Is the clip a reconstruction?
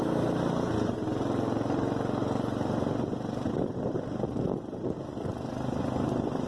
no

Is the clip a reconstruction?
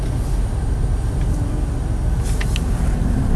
no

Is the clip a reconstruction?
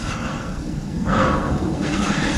yes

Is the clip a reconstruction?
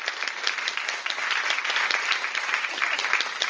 no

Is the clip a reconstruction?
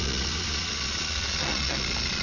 yes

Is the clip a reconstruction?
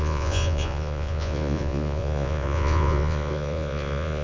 yes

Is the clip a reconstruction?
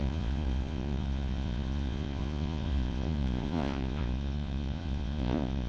yes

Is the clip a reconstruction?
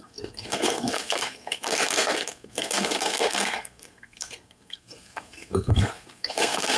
yes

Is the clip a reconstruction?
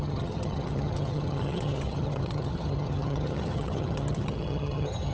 yes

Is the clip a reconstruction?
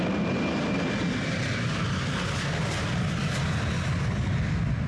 no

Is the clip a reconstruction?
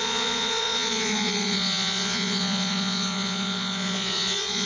yes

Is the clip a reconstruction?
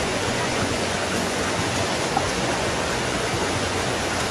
yes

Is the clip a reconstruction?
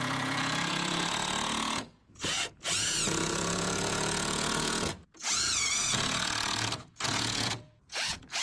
yes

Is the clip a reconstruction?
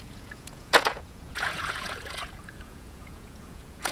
yes